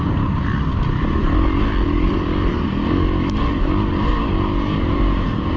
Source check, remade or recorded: recorded